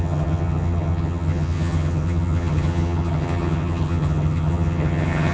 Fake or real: fake